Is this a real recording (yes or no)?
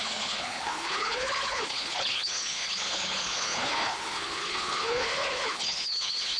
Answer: no